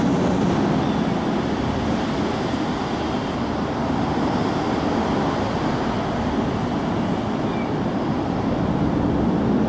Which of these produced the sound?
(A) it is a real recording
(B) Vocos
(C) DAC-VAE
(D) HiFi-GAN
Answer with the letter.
A